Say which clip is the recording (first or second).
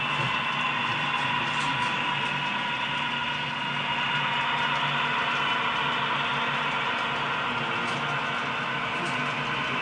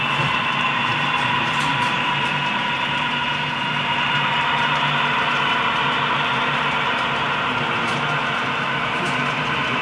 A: first